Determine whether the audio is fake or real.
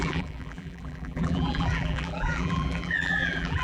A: fake